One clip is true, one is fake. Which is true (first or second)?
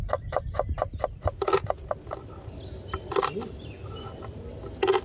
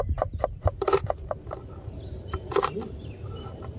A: first